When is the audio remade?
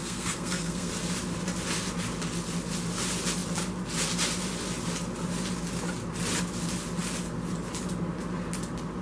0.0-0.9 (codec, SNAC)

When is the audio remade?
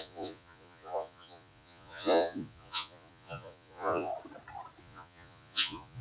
0.0-4.1 (vocoder, Vocos); 4.8-6.0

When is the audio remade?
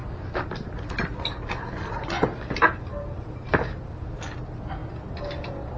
none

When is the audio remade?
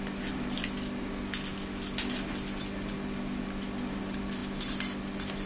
none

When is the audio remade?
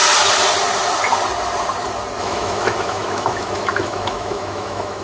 2.2-5.0 (autoencoder, DAC-VAE)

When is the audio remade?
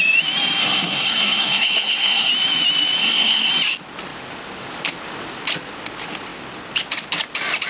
0.6-2.3 (codec, SNAC); 3.0-3.5